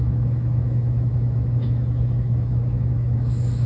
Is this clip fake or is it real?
fake